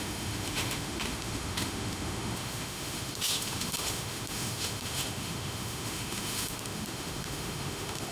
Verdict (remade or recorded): remade